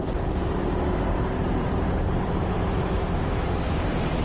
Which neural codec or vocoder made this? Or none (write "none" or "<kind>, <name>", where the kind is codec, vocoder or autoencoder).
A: vocoder, BigVGAN v2